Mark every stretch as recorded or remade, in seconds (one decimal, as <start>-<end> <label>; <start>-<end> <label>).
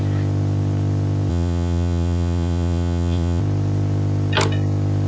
0.0-1.3 recorded; 1.3-3.4 remade; 3.4-5.1 recorded